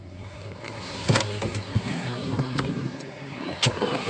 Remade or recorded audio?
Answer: remade